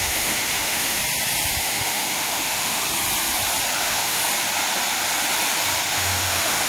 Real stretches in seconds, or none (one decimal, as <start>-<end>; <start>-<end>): 1.0-1.6; 2.8-3.8; 4.2-5.9